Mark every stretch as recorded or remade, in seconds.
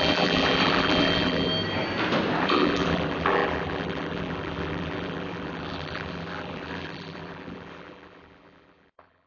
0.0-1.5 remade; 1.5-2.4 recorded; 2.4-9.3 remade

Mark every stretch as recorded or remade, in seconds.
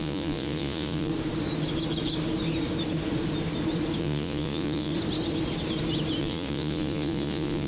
0.0-1.1 remade; 1.1-4.0 recorded; 4.0-4.9 remade; 4.9-6.2 recorded; 6.2-7.7 remade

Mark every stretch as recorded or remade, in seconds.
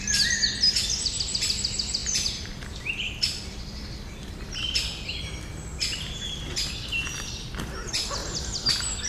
0.0-2.0 recorded; 2.0-5.2 remade; 5.2-9.1 recorded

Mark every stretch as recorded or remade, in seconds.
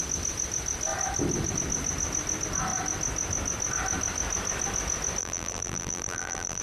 0.0-5.2 recorded; 5.2-6.6 remade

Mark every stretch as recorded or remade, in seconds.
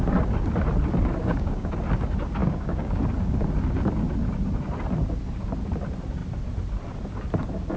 0.0-1.2 recorded; 1.2-1.7 remade; 1.7-2.4 recorded; 2.4-3.0 remade; 3.0-7.8 recorded